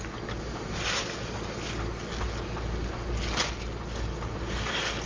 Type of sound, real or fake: real